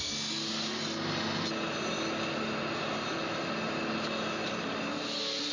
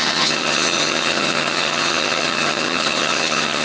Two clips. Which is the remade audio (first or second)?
second